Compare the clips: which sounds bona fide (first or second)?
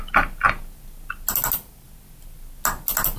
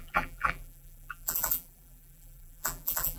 first